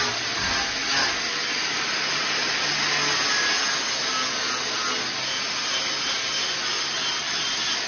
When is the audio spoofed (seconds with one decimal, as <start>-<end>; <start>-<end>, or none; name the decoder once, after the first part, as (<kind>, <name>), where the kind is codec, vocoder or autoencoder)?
none